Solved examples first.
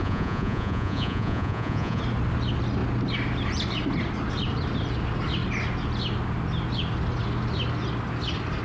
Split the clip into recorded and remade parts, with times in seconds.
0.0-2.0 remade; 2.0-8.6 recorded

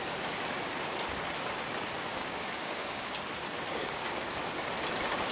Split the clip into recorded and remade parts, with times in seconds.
0.0-2.1 recorded; 2.1-3.2 remade; 3.2-3.8 recorded; 3.8-4.4 remade; 4.4-5.3 recorded

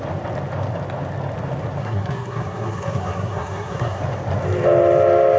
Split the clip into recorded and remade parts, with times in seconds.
0.0-1.8 recorded; 1.8-4.0 remade; 4.0-5.4 recorded

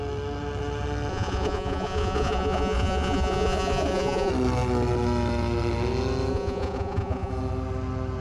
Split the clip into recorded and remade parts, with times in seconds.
0.0-1.1 recorded; 1.1-4.3 remade; 4.3-6.3 recorded; 6.3-7.3 remade; 7.3-8.2 recorded